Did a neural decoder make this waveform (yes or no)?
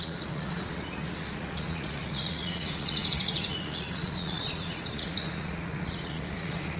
yes